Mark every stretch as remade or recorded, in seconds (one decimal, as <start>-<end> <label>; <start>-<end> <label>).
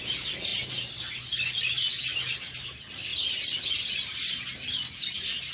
0.0-5.5 recorded